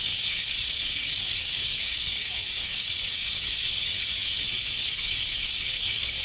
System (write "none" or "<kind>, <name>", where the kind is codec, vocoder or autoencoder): codec, DAC